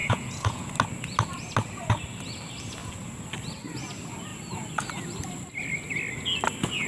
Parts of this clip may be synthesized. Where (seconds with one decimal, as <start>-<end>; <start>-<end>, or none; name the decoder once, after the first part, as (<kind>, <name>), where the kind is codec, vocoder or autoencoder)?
0.0-0.7 (vocoder, Vocos)